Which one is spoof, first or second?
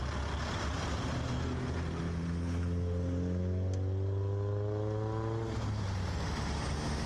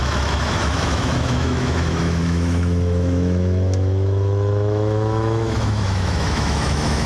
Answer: second